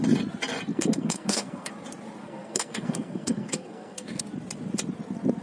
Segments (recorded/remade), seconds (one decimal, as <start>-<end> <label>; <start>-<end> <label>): 0.0-0.7 recorded; 0.7-1.7 remade; 1.7-2.2 recorded; 2.2-4.2 remade; 4.2-5.4 recorded